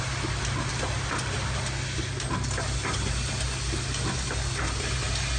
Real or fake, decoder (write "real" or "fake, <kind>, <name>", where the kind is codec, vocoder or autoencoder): real